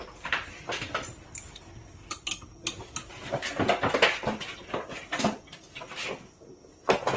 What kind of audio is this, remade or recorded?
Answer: recorded